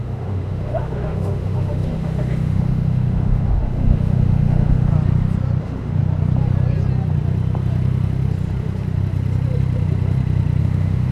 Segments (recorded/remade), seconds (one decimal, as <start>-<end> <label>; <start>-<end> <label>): 0.0-4.9 remade; 4.9-5.6 recorded; 5.6-6.0 remade; 6.0-10.6 recorded; 10.6-11.1 remade